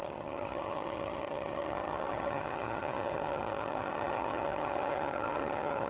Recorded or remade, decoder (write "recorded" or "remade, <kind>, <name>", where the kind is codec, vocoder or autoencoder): remade, vocoder, HiFi-GAN